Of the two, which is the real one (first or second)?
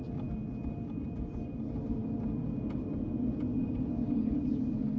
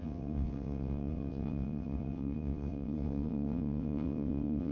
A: first